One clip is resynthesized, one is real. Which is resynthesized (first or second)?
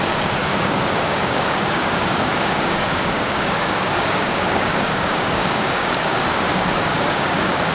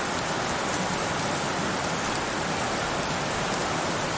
first